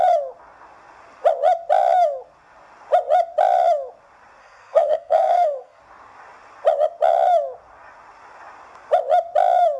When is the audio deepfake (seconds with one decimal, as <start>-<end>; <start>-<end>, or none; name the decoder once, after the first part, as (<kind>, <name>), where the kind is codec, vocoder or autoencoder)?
4.4-5.8 (codec, SNAC)